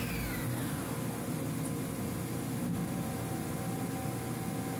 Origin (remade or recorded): recorded